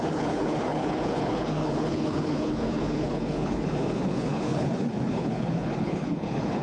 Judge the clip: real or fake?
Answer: fake